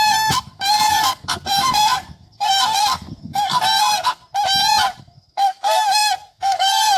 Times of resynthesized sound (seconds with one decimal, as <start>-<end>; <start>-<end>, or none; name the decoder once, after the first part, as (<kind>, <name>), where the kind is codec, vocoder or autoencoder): 0.0-4.2 (codec, SNAC); 5.0-7.0